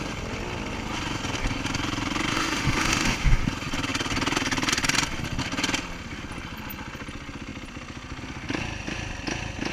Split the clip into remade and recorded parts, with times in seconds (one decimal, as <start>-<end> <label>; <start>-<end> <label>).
0.0-2.3 recorded; 2.3-3.4 remade; 3.4-9.7 recorded